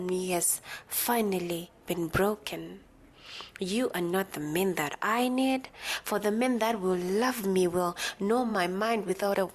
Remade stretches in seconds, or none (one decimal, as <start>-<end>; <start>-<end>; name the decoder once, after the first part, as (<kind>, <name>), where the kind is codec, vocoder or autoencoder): 8.5-9.5 (vocoder, BigVGAN v2)